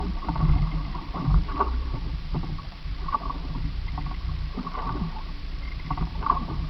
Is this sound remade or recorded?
remade